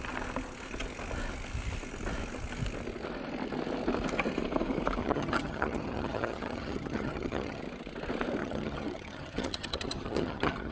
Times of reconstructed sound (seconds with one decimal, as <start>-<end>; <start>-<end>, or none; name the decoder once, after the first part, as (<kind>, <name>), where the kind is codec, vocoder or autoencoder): 5.0-7.6 (vocoder, HiFi-GAN); 8.4-10.7